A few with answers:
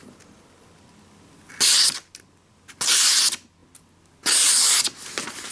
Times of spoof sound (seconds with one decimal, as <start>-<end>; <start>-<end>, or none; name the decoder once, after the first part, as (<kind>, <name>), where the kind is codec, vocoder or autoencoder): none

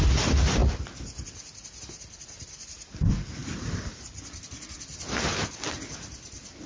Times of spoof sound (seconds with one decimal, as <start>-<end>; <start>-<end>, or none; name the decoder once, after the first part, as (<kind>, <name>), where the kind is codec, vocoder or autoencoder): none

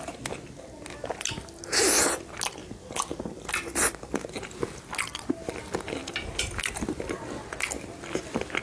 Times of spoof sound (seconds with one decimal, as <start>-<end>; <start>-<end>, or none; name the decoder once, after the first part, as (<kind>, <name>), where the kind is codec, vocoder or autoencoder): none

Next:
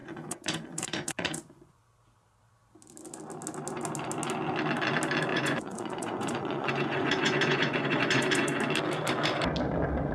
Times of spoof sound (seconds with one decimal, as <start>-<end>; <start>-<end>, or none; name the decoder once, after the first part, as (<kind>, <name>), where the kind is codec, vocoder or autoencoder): 0.0-1.8 (vocoder, Vocos); 5.3-8.6

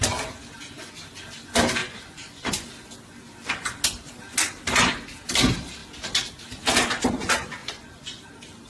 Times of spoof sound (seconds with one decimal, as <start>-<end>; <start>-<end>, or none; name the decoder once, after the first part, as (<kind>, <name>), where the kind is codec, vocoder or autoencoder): 1.8-2.7 (vocoder, Vocos); 7.6-8.2

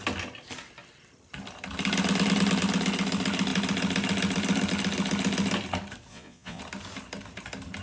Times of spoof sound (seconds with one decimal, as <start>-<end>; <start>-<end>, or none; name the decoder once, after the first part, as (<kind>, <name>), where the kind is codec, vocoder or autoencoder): 6.1-6.6 (vocoder, Vocos)